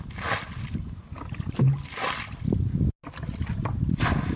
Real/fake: real